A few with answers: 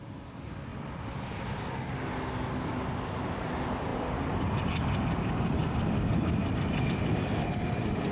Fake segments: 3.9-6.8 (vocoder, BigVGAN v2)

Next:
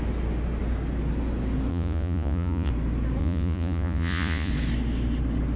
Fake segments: 1.7-2.7 (vocoder, Vocos); 3.2-4.5

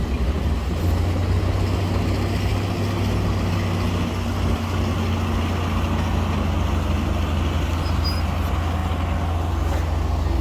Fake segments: none

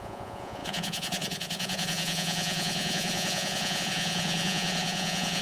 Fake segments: 0.0-5.4 (vocoder, Vocos)

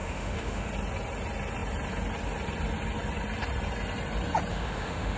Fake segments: 0.0-0.7 (autoencoder, DAC-VAE); 4.5-5.2